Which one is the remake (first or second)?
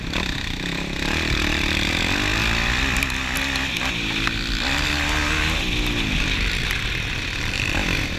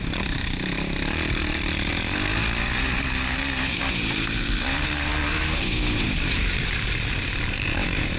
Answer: second